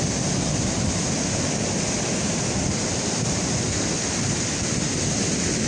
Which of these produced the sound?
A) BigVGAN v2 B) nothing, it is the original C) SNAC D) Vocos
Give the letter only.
B